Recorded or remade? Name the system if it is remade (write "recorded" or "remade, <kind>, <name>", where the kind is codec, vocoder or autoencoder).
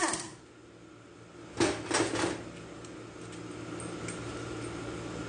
recorded